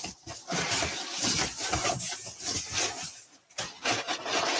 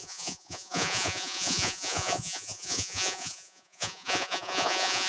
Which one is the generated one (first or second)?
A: second